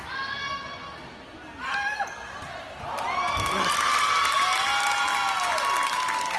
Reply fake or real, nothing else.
real